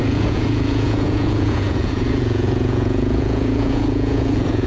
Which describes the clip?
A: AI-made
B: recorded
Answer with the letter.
A